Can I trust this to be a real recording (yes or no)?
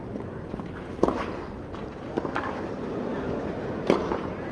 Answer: no